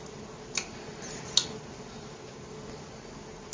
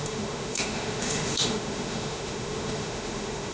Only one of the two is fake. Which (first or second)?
second